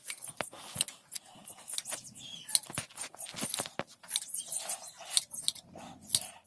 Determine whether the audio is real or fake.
real